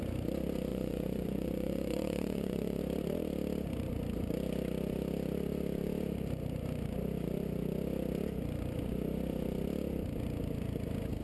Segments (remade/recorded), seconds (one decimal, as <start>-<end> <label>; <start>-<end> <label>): 0.0-0.7 recorded; 0.7-2.8 remade; 2.8-11.2 recorded